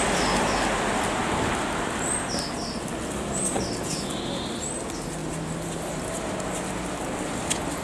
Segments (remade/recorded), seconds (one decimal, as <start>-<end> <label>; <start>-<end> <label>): 0.0-7.8 recorded